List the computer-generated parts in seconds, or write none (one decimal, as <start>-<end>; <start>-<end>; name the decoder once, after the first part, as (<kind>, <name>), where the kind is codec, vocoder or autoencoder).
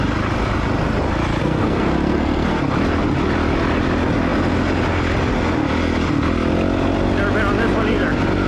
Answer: 1.4-2.6 (codec, SNAC)